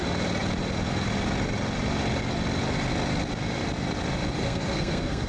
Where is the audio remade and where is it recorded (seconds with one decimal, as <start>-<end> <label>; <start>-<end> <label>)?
0.0-4.4 recorded; 4.4-5.3 remade